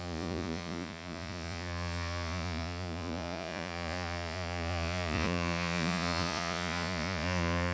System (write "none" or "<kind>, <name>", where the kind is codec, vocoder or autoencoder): vocoder, Vocos